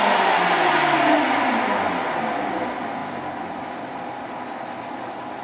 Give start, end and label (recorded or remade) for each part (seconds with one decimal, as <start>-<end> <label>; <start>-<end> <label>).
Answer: 0.0-5.4 recorded